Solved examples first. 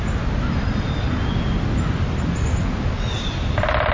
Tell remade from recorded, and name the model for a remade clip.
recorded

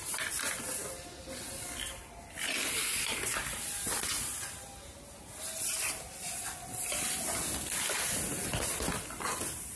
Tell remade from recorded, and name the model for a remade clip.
recorded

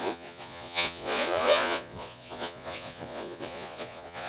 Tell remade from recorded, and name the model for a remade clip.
remade, vocoder, Vocos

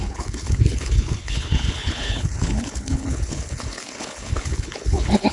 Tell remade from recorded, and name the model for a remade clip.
remade, codec, HILCodec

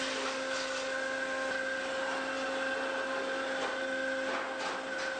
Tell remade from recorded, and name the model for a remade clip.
recorded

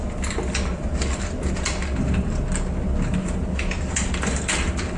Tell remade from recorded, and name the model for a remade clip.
recorded